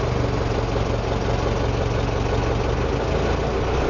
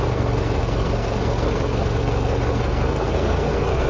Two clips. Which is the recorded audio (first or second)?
first